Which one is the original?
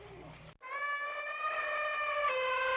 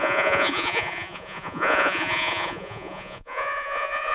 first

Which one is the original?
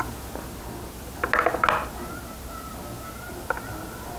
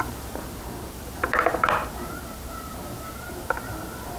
first